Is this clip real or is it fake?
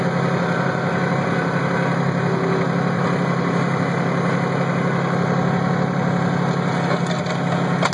real